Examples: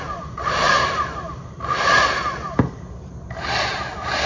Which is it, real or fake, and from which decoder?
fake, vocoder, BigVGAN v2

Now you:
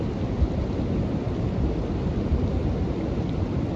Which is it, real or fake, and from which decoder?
real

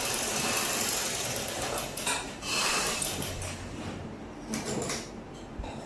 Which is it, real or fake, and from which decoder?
fake, vocoder, BigVGAN v2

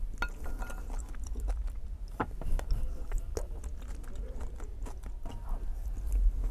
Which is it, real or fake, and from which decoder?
real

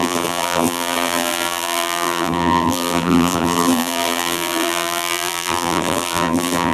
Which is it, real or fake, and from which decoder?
fake, vocoder, BigVGAN v2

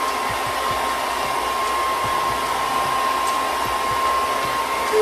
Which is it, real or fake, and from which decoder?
real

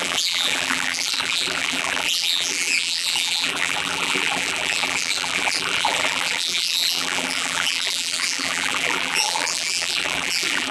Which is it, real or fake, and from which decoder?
fake, vocoder, BigVGAN v2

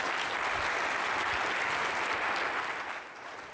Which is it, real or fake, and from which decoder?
real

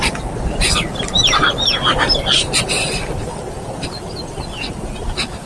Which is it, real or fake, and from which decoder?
real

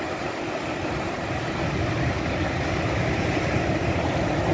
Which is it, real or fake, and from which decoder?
real